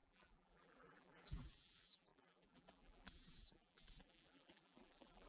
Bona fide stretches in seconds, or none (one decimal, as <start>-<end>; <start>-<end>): none